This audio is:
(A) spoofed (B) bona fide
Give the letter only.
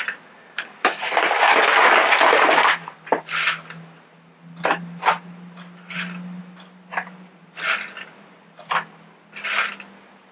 B